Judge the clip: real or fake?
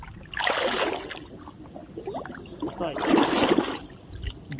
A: real